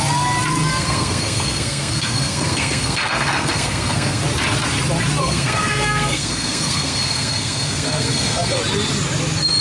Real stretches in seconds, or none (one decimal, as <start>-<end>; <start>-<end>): 0.0-0.7; 4.2-5.2; 8.6-9.6